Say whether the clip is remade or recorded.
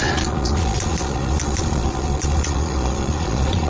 remade